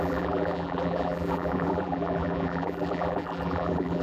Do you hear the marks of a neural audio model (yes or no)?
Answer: yes